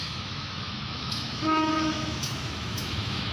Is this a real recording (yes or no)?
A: no